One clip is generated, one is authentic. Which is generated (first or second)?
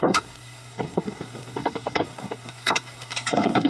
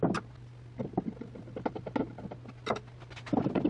first